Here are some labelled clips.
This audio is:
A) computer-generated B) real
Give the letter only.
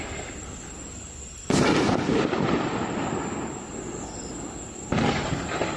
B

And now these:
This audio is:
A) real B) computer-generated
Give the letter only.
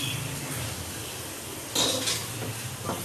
A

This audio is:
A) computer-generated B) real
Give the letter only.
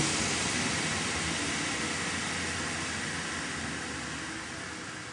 B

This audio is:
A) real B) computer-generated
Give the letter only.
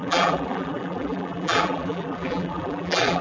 B